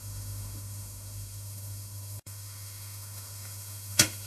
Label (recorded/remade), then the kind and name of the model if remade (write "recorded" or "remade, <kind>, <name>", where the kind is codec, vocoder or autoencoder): remade, autoencoder, DAC-VAE